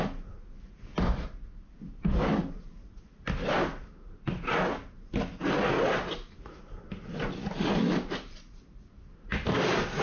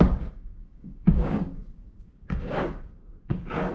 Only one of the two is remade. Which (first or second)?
second